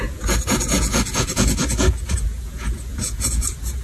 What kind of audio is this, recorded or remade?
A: remade